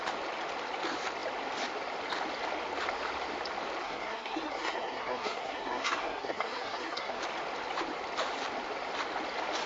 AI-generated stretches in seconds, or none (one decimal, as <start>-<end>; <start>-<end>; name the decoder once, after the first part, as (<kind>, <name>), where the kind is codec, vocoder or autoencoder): 3.8-7.2 (codec, SNAC)